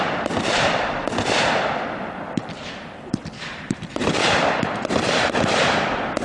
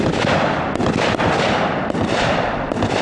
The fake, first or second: first